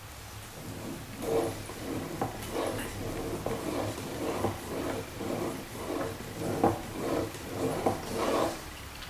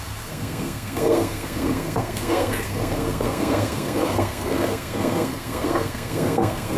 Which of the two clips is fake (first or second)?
second